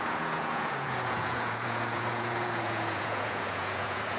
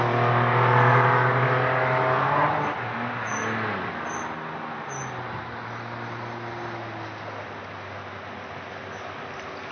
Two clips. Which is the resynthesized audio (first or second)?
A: first